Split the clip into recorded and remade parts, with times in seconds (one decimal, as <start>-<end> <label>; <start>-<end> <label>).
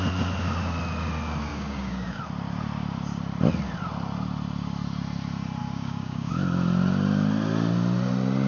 0.0-1.5 recorded; 1.5-2.2 remade; 2.2-5.6 recorded; 5.6-6.3 remade; 6.3-8.5 recorded